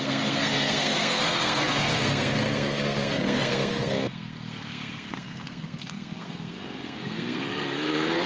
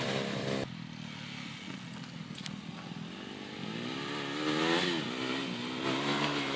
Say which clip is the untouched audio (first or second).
second